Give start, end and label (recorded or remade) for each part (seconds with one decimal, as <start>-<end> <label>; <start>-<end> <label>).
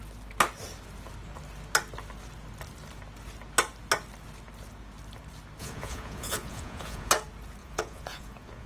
0.0-5.6 recorded; 5.6-7.1 remade; 7.1-7.6 recorded; 7.6-8.7 remade